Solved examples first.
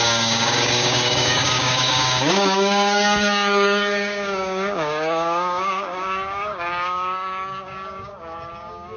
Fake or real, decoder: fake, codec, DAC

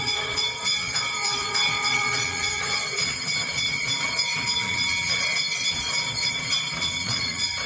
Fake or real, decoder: fake, vocoder, Vocos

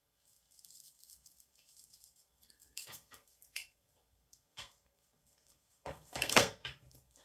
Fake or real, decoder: fake, codec, SNAC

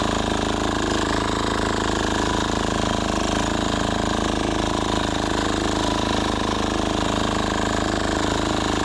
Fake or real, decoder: fake, vocoder, BigVGAN v2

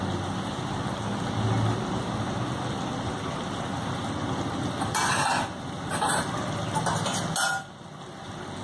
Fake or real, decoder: real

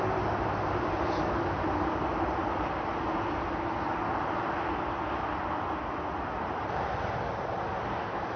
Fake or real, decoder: real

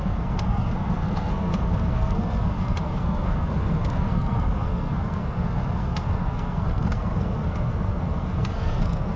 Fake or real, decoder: fake, codec, SNAC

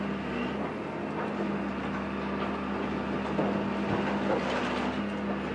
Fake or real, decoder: real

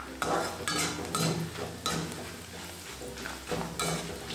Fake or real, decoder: real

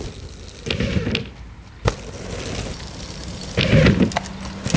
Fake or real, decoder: real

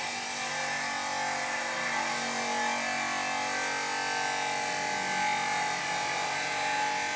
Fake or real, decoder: real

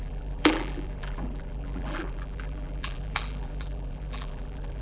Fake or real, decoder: fake, vocoder, BigVGAN v2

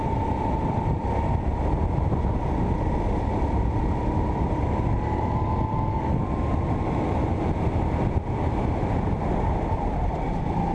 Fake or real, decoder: real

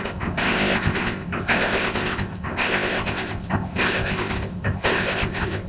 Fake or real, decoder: fake, codec, ZipCodec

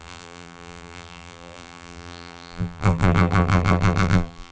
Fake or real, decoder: fake, vocoder, BigVGAN v2